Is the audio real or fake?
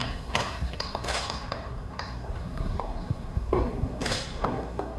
fake